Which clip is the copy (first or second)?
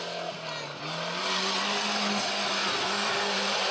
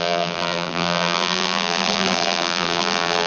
second